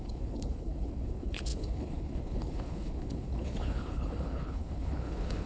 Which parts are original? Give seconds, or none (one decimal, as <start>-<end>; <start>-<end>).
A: none